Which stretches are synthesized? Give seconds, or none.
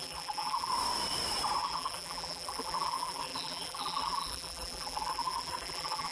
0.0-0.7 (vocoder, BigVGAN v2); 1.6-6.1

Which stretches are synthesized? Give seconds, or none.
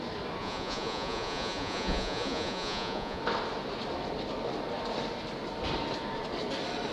0.4-3.2 (vocoder, Vocos)